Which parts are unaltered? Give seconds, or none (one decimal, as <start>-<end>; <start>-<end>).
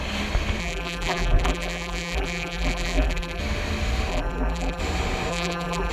0.0-0.6; 3.4-4.1; 4.8-5.3